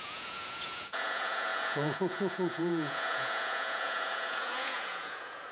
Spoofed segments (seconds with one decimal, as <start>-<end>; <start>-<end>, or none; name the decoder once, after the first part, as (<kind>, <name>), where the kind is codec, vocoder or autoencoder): 0.0-5.5 (vocoder, Vocos)